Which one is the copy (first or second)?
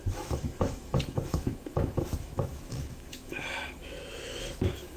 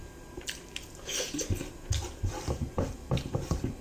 first